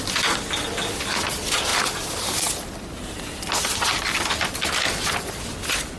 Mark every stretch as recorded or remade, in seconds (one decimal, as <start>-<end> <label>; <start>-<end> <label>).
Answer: 0.0-6.0 recorded